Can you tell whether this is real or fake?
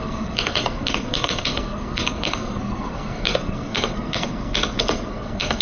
fake